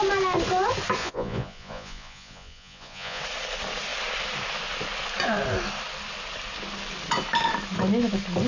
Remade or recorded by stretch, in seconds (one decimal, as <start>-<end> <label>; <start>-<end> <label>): 0.0-1.0 recorded; 1.0-3.2 remade; 3.2-8.5 recorded